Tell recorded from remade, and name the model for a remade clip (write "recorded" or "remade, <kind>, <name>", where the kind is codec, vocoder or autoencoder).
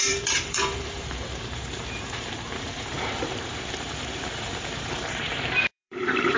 remade, vocoder, BigVGAN v2